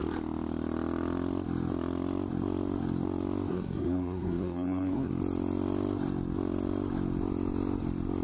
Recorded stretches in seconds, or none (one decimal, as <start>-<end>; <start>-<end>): 0.0-3.5; 5.1-8.2